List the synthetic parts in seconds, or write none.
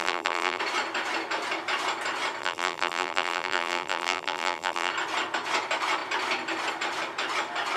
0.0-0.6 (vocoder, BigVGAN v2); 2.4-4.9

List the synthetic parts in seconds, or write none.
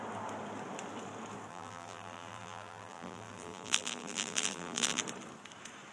1.5-5.0 (vocoder, BigVGAN v2)